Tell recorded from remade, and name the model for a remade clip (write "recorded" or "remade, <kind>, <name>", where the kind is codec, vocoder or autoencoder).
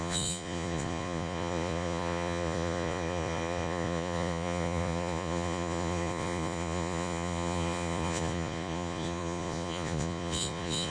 remade, vocoder, Vocos